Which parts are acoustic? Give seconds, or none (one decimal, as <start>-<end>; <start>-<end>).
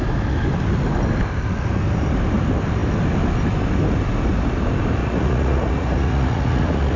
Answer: 0.0-5.0